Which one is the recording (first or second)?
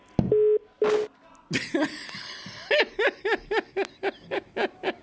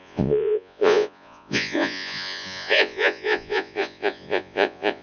first